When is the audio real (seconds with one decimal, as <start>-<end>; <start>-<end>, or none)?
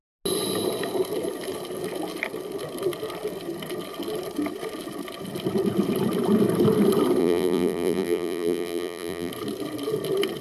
0.0-7.2; 9.3-10.4